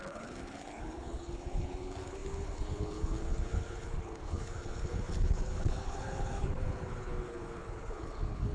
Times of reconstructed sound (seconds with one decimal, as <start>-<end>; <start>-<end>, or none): 0.0-8.5

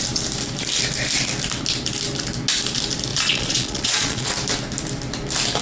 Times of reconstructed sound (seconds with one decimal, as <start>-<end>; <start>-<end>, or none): 3.1-4.3

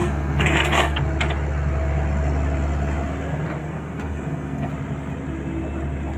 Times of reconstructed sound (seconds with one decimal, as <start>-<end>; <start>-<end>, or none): 0.0-1.0; 3.6-4.7

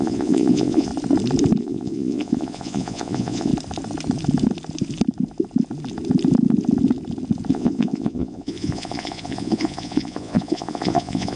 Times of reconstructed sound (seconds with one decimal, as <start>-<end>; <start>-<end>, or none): 0.0-0.9; 1.6-3.5; 7.5-11.4

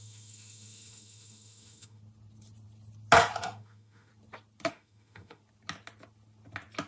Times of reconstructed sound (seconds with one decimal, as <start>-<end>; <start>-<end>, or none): 0.0-2.0; 3.4-4.1; 4.7-5.4